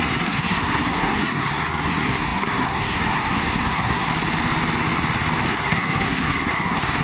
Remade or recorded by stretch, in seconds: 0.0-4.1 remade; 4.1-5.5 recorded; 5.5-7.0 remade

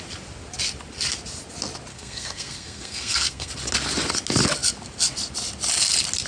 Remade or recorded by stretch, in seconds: 0.0-1.9 recorded; 1.9-3.5 remade; 3.5-6.3 recorded

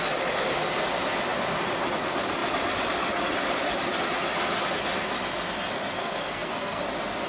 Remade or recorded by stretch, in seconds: 0.0-6.0 recorded; 6.0-6.8 remade; 6.8-7.3 recorded

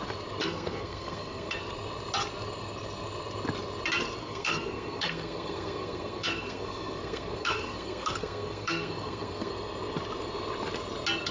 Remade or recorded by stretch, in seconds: 0.0-0.4 recorded; 0.4-1.6 remade; 1.6-4.2 recorded; 4.2-9.5 remade; 9.5-11.3 recorded

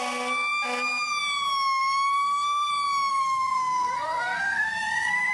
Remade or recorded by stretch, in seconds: 0.0-1.8 recorded; 1.8-2.7 remade; 2.7-3.1 recorded; 3.1-5.3 remade

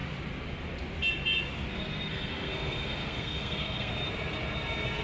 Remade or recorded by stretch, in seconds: 0.0-2.1 recorded; 2.1-3.9 remade; 3.9-5.0 recorded

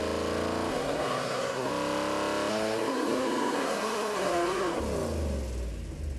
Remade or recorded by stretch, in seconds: 0.0-0.7 recorded; 0.7-1.7 remade; 1.7-2.5 recorded; 2.5-4.8 remade; 4.8-6.2 recorded